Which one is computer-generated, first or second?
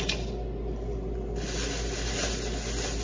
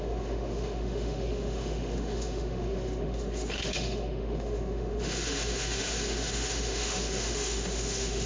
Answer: second